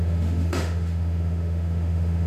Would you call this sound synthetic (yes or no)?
yes